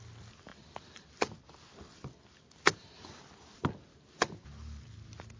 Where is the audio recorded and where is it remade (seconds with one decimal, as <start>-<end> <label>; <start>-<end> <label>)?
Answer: 0.0-0.5 recorded; 0.5-3.7 remade; 3.7-5.4 recorded